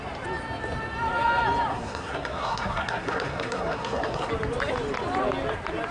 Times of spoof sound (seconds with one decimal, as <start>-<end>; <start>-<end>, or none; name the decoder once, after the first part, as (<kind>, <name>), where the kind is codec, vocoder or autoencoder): 1.7-4.3 (codec, SNAC)